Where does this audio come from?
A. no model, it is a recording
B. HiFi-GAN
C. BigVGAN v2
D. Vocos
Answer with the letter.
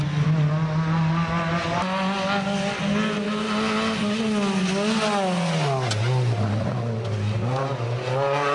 A